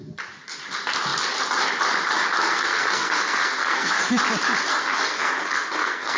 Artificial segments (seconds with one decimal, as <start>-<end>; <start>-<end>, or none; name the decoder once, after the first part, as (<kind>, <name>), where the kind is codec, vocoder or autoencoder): 2.4-4.2 (codec, SNAC); 4.7-6.2